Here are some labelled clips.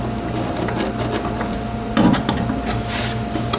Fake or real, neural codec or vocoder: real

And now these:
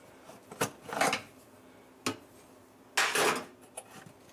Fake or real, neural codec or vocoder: real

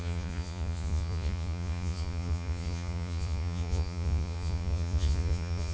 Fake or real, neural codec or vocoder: fake, vocoder, Vocos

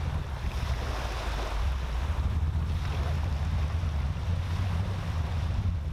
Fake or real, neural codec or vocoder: real